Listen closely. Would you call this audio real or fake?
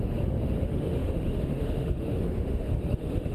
fake